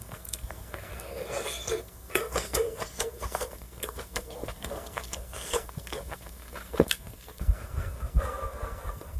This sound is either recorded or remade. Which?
remade